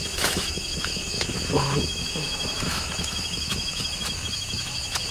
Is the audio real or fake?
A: fake